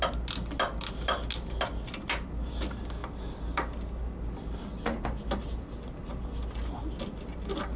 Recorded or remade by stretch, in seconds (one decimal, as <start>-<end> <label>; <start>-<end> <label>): 0.0-7.8 recorded